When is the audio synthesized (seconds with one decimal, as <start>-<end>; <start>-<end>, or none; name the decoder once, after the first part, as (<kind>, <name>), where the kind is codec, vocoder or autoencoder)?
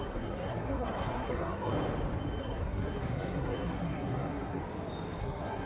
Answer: 0.0-1.7 (codec, SNAC); 2.4-4.6; 5.2-5.7